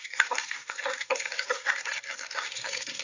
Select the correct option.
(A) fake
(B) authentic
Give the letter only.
A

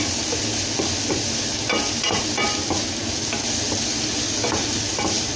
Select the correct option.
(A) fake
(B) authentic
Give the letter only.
B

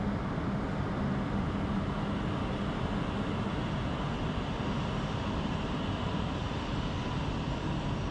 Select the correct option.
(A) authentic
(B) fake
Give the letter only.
A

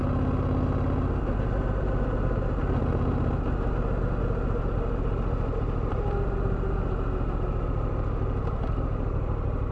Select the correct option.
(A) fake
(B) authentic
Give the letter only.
B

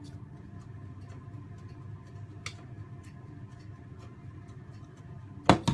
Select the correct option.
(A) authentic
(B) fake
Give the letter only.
A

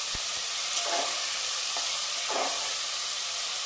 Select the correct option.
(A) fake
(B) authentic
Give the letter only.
A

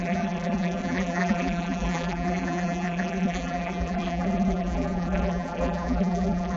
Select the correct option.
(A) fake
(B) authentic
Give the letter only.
A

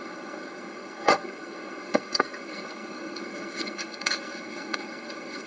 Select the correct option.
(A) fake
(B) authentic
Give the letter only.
A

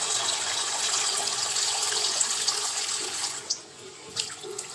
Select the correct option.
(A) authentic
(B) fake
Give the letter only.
B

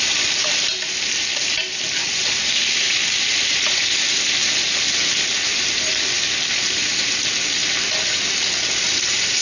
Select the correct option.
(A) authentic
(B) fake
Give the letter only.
A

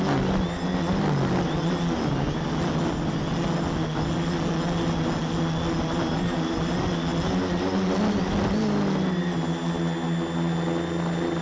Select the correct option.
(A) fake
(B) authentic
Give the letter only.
B